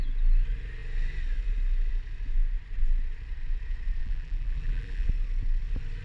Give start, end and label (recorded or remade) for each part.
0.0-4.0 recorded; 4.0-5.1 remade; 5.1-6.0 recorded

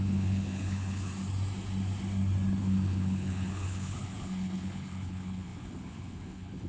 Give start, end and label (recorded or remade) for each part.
0.0-1.1 remade; 1.1-2.6 recorded; 2.6-6.7 remade